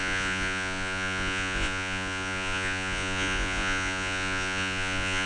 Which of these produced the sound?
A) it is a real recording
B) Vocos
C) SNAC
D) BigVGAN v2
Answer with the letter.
B